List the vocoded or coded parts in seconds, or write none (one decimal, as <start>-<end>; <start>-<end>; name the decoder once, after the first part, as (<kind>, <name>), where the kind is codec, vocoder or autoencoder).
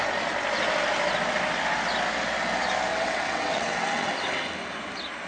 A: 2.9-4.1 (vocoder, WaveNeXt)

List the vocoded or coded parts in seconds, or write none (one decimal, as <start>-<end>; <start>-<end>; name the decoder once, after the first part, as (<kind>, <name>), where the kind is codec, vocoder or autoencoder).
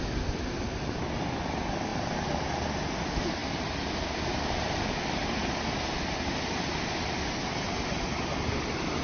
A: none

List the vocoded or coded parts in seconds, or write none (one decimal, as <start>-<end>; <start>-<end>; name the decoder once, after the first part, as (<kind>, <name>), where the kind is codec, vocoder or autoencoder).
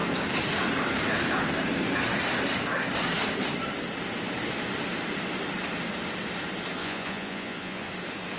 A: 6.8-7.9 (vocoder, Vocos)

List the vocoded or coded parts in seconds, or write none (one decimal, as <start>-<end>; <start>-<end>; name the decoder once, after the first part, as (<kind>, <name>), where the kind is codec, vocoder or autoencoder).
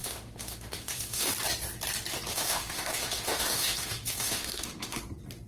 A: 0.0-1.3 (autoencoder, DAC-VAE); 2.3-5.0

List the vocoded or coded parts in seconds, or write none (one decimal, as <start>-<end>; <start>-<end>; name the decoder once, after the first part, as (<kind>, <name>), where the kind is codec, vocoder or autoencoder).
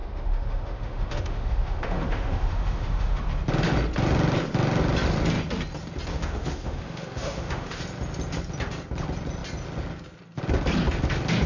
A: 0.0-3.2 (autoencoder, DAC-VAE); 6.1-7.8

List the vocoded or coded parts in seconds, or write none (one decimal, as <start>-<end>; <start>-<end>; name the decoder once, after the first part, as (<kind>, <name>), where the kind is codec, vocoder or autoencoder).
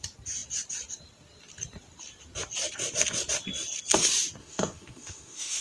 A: 4.4-5.6 (autoencoder, DAC-VAE)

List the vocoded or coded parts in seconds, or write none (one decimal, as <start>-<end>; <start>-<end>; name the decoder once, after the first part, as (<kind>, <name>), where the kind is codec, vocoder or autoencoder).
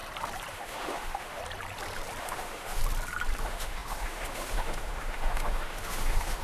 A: 0.5-1.4 (autoencoder, DAC-VAE); 2.2-2.8; 3.4-6.4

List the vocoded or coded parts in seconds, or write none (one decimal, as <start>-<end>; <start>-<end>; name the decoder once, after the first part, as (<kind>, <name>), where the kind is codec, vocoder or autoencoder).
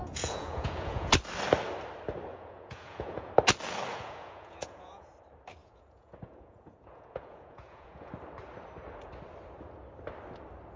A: 0.0-1.1 (vocoder, Vocos); 2.3-3.3; 3.9-5.1; 5.6-8.1